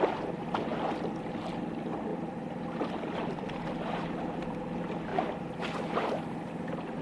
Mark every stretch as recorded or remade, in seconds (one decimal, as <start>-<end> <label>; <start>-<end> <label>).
0.0-0.7 remade; 0.7-1.6 recorded; 1.6-5.1 remade; 5.1-7.0 recorded